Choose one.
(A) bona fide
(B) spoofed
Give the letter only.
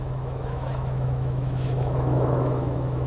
B